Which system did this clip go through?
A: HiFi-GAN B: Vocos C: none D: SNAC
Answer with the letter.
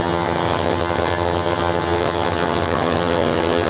A